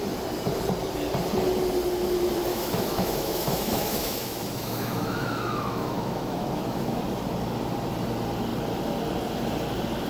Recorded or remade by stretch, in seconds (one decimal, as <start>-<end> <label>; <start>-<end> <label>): 0.0-2.5 recorded; 2.5-7.0 remade; 7.0-10.1 recorded